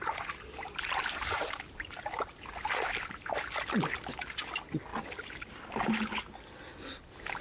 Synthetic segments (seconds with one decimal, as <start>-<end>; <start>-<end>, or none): none